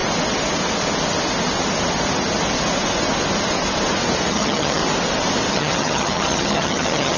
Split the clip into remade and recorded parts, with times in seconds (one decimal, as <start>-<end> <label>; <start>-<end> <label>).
0.0-4.3 recorded; 4.3-4.8 remade; 4.8-5.5 recorded; 5.5-7.2 remade